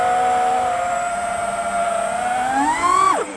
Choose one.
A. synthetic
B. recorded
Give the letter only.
B